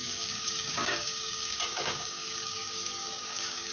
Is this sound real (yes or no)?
no